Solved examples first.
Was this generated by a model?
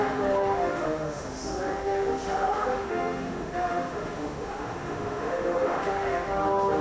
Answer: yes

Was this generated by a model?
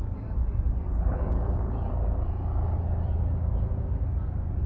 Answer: no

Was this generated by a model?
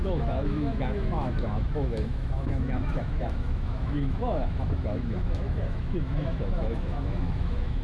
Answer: yes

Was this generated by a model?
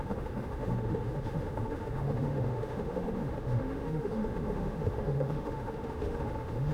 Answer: yes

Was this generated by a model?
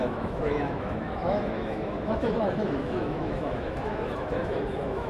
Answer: yes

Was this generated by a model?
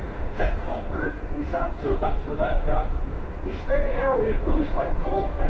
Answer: yes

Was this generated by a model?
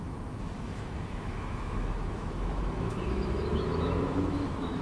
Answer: yes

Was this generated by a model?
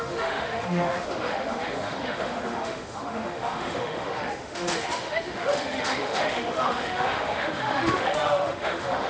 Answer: yes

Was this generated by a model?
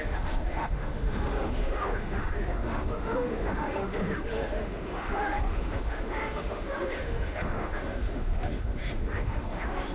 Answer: yes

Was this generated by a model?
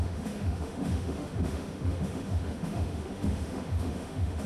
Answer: yes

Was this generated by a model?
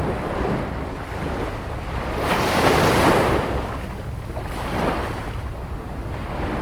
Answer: no